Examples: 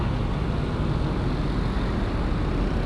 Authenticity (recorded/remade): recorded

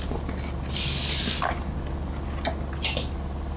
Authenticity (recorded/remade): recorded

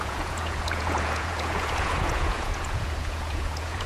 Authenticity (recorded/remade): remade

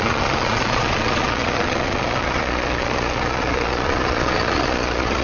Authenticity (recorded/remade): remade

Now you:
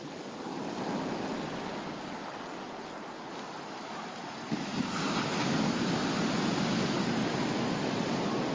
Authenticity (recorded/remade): recorded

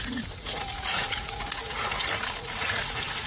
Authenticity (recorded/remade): remade